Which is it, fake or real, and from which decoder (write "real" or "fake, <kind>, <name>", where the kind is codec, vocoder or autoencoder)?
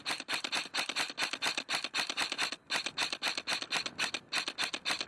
real